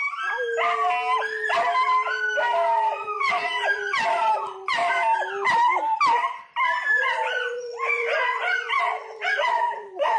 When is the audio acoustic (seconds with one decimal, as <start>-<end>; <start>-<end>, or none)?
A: 0.0-2.9; 4.8-6.9